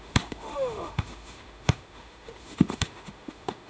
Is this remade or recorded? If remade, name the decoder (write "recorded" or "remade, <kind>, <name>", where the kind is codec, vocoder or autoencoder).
remade, autoencoder, DAC-VAE